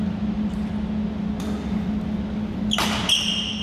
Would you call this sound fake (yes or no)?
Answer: no